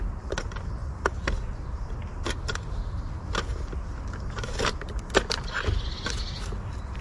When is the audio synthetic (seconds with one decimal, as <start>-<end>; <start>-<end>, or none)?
none